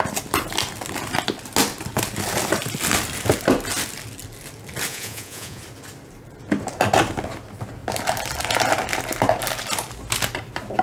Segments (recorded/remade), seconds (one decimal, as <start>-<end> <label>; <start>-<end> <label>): 0.0-4.9 recorded; 4.9-5.6 remade; 5.6-10.8 recorded